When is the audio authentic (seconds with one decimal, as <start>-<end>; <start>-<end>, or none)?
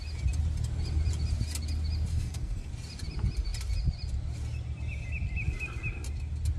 0.0-2.1; 2.7-6.6